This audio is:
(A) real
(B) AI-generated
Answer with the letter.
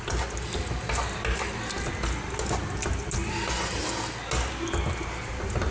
A